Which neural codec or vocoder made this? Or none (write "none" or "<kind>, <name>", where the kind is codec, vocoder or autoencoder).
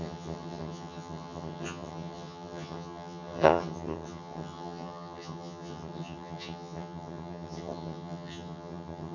vocoder, HiFi-GAN